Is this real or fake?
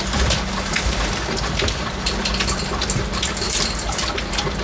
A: real